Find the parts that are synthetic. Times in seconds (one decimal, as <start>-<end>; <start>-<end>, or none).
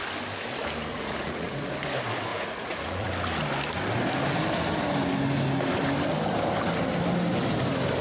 0.9-1.8; 2.3-3.1